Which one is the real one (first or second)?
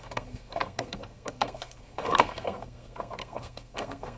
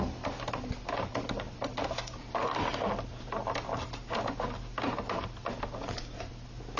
second